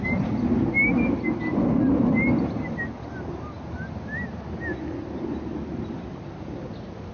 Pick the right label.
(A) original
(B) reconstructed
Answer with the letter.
A